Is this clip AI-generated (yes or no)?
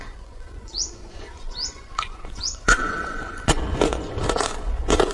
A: yes